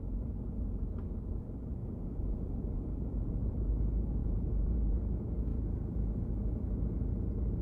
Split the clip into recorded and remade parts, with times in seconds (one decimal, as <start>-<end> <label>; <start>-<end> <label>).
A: 0.0-1.8 recorded; 1.8-3.7 remade; 3.7-4.2 recorded; 4.2-5.0 remade; 5.0-5.5 recorded; 5.5-6.1 remade; 6.1-7.6 recorded